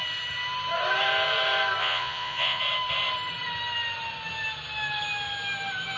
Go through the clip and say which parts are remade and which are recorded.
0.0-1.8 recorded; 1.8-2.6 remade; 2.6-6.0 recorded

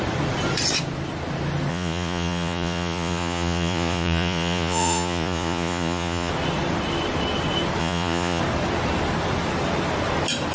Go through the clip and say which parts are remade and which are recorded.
0.0-1.7 recorded; 1.7-6.3 remade; 6.3-7.8 recorded; 7.8-8.4 remade; 8.4-10.5 recorded

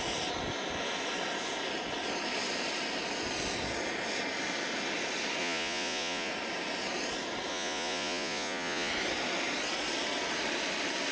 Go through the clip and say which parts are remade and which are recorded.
0.0-5.4 recorded; 5.4-6.3 remade; 6.3-7.5 recorded; 7.5-8.9 remade; 8.9-11.1 recorded

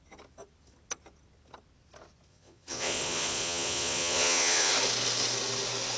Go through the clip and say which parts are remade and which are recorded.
0.0-2.3 recorded; 2.3-4.7 remade; 4.7-6.0 recorded

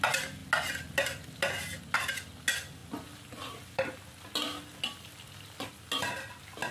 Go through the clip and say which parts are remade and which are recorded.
0.0-6.7 recorded

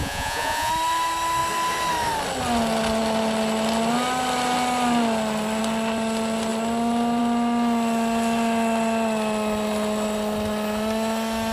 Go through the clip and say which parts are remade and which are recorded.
0.0-0.7 remade; 0.7-11.5 recorded